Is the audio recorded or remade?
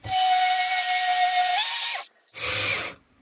recorded